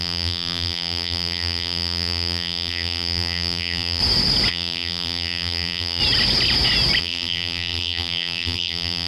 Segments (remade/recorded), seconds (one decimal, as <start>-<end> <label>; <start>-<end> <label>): 0.0-4.0 remade; 4.0-4.5 recorded; 4.5-6.0 remade; 6.0-7.0 recorded; 7.0-9.1 remade